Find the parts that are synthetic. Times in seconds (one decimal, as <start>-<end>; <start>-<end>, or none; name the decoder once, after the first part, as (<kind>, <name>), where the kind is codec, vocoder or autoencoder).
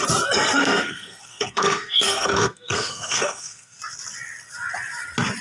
0.6-3.8 (codec, SNAC)